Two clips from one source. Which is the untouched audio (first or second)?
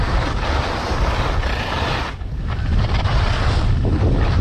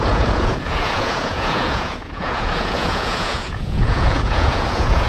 first